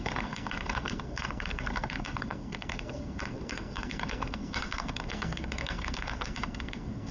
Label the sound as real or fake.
fake